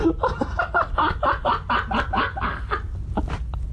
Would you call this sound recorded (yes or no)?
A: yes